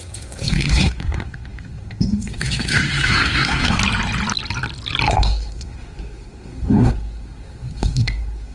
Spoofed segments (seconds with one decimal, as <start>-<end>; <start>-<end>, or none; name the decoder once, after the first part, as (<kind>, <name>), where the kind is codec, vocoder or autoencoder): 0.0-3.8 (codec, SNAC); 5.1-8.5